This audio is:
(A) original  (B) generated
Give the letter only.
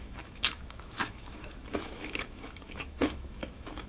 B